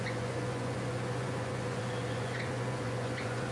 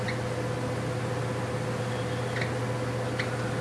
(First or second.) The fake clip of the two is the first